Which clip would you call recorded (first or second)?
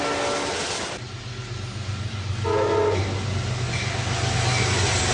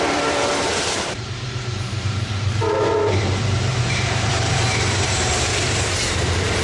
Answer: first